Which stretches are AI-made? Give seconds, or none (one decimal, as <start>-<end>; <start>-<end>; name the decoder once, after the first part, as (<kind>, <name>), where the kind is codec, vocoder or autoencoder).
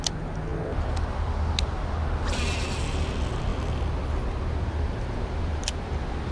3.5-5.8 (vocoder, BigVGAN v2)